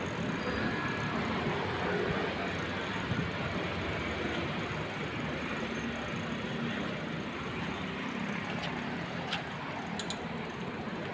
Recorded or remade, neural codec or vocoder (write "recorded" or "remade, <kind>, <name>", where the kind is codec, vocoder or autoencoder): recorded